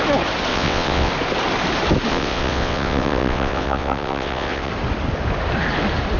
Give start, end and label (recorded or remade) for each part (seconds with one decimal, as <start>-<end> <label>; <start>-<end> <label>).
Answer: 0.0-0.5 recorded; 0.5-1.1 remade; 1.1-2.1 recorded; 2.1-4.7 remade; 4.7-6.2 recorded

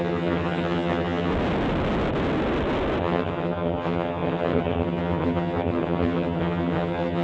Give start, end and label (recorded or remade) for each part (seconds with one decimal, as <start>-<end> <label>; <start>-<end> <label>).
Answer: 0.0-1.3 remade; 1.3-3.0 recorded; 3.0-7.2 remade

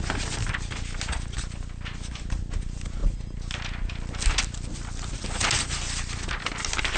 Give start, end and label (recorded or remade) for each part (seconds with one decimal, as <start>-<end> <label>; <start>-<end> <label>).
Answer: 0.0-7.0 recorded